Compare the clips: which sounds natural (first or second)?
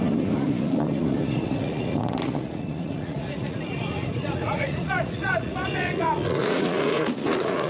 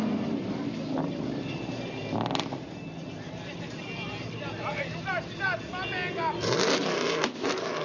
second